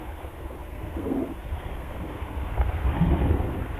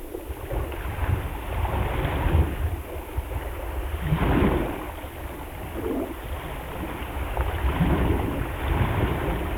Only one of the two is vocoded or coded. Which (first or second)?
first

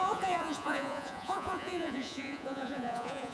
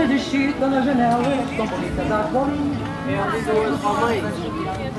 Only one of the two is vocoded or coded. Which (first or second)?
first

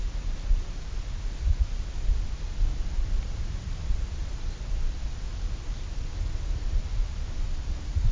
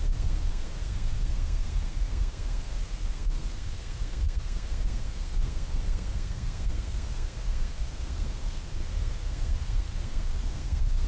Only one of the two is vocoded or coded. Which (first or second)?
second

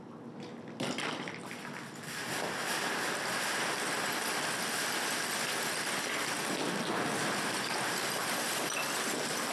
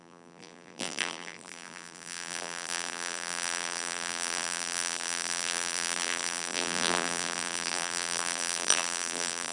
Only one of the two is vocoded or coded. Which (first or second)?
second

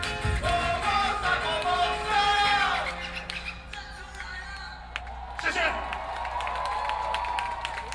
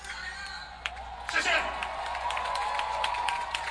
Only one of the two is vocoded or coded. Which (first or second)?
second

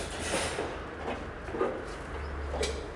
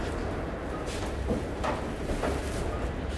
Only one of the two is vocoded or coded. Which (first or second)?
second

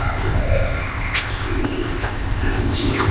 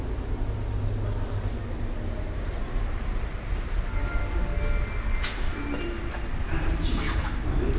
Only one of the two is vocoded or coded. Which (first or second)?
first